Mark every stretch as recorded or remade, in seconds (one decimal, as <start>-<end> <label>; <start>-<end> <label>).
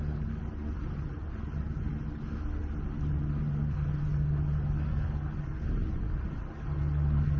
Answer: 0.0-0.8 recorded; 0.8-1.9 remade; 1.9-7.4 recorded